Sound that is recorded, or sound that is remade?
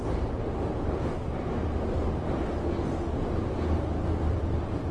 recorded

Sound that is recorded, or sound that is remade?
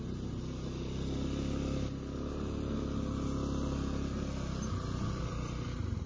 recorded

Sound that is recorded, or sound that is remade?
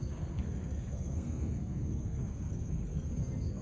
remade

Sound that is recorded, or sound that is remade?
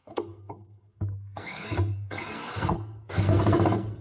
remade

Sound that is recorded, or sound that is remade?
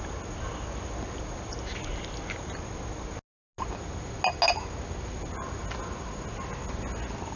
recorded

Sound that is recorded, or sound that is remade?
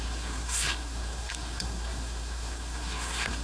remade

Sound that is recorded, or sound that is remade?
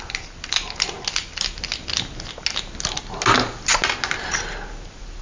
recorded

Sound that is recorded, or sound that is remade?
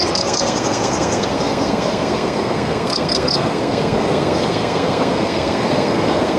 remade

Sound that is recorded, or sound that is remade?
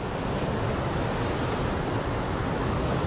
recorded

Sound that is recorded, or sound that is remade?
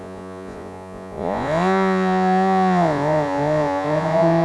remade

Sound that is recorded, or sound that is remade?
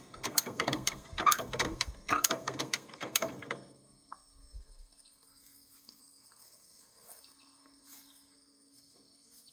remade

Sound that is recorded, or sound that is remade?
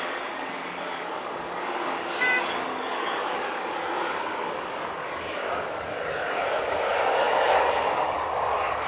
remade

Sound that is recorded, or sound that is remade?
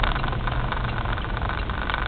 recorded